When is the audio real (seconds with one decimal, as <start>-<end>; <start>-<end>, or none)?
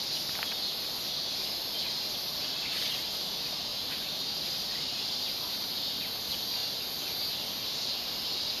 0.0-2.4; 3.3-3.7; 6.0-8.6